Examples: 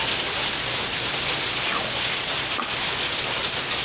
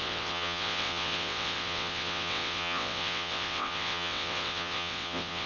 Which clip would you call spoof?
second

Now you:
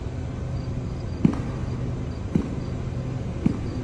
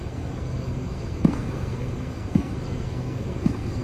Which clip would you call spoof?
second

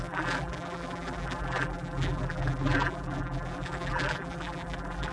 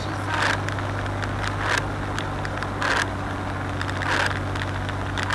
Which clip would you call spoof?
first